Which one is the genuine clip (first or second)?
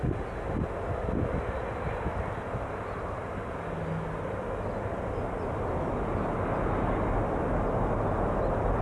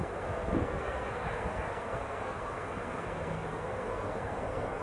first